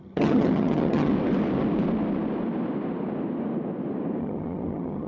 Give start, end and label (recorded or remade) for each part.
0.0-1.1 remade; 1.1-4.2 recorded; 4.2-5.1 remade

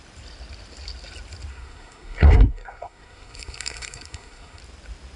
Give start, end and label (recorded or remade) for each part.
0.0-1.5 recorded; 1.5-4.6 remade; 4.6-5.2 recorded

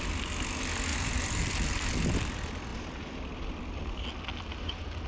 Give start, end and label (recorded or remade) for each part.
0.0-0.9 recorded; 0.9-1.5 remade; 1.5-5.1 recorded

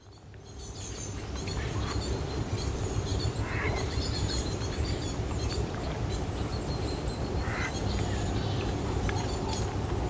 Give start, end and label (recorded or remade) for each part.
0.0-3.1 recorded; 3.1-7.8 remade; 7.8-10.1 recorded

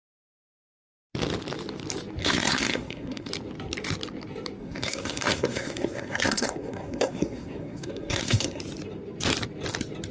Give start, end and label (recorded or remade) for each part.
0.0-2.2 recorded; 2.2-3.3 remade; 3.3-4.6 recorded; 4.6-8.6 remade; 8.6-10.1 recorded

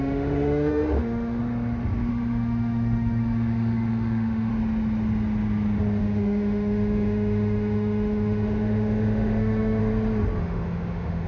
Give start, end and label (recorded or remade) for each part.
0.0-1.4 remade; 1.4-2.1 recorded; 2.1-4.5 remade; 4.5-6.0 recorded; 6.0-9.8 remade; 9.8-10.4 recorded; 10.4-11.3 remade

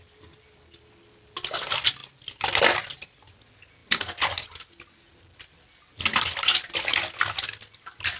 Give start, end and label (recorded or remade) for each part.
0.0-8.2 recorded

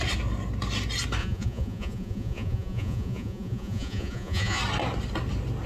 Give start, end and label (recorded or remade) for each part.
0.0-1.2 recorded; 1.2-4.6 remade; 4.6-5.7 recorded